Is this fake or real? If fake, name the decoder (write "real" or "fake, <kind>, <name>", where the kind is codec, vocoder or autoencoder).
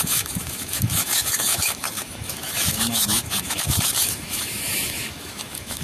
fake, autoencoder, DAC-VAE